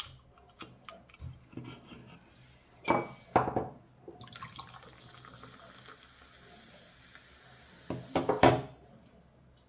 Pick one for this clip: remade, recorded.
recorded